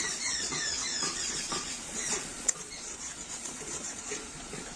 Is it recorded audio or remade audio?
remade